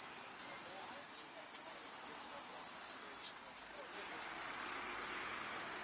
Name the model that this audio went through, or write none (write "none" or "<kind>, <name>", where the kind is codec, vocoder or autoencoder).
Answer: none